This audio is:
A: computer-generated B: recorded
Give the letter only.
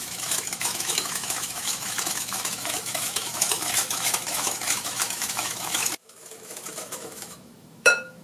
A